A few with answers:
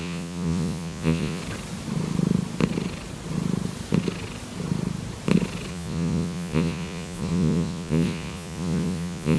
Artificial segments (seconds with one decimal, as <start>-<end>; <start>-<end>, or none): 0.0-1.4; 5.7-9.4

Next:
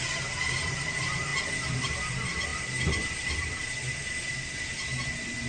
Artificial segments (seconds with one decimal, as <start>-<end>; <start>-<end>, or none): none

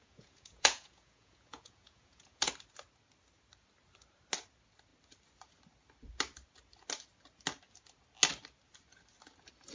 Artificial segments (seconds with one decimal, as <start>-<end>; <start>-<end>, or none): 0.0-2.5

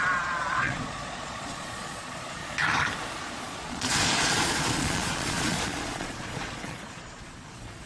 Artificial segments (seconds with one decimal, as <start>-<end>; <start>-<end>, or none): 0.0-2.4; 3.2-7.9